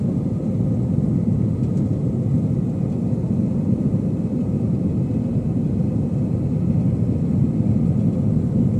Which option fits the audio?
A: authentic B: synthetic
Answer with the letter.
A